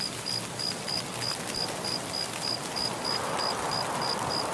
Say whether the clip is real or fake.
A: real